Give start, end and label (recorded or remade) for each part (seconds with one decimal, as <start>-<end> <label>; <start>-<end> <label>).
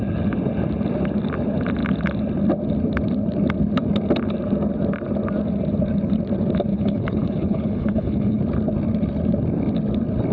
0.0-6.7 recorded; 6.7-8.4 remade; 8.4-10.3 recorded